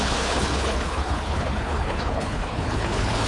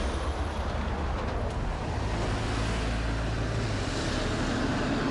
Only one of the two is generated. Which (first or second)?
first